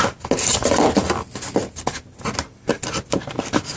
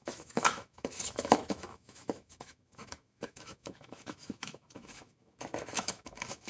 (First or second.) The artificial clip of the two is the second